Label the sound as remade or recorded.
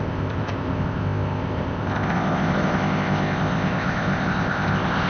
remade